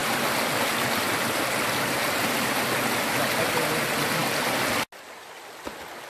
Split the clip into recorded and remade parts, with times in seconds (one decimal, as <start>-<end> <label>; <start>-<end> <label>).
0.0-0.6 remade; 0.6-2.0 recorded; 2.0-2.6 remade; 2.6-6.1 recorded